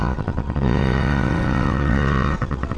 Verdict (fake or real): fake